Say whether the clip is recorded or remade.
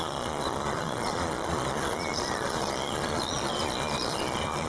remade